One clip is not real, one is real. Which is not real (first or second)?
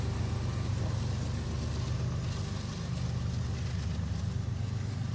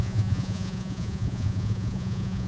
second